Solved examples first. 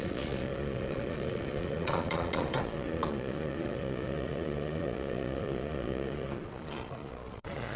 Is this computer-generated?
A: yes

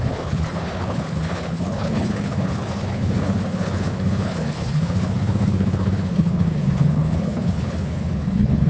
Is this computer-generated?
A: yes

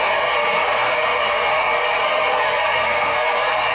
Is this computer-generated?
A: yes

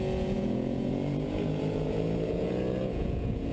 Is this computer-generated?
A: yes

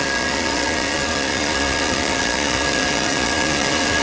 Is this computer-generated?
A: yes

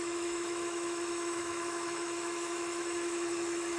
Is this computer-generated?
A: yes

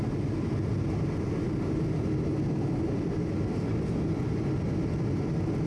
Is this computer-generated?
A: no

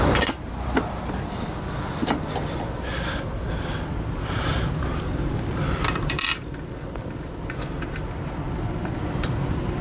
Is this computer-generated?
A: yes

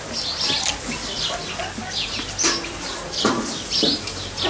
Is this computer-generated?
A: no